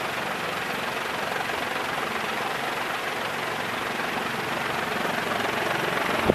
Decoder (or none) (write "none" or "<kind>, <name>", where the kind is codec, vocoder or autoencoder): none